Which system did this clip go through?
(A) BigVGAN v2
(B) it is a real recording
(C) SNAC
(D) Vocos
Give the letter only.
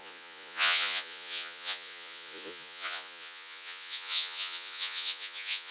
D